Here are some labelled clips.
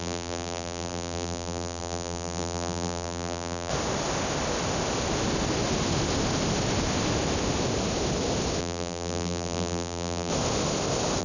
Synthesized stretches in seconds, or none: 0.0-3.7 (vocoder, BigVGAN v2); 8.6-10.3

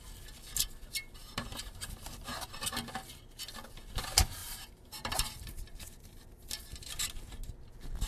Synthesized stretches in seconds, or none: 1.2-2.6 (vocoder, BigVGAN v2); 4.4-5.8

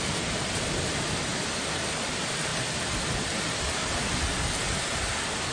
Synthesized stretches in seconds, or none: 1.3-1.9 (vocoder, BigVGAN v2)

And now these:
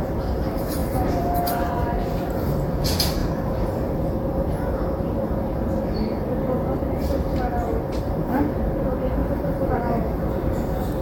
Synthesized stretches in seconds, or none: 0.8-1.4 (vocoder, BigVGAN v2); 9.2-9.7

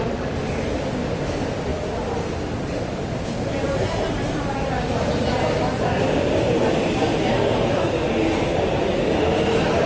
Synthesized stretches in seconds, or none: 1.7-4.4 (vocoder, BigVGAN v2)